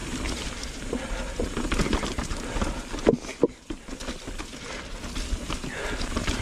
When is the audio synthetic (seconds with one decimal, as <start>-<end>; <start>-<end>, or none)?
none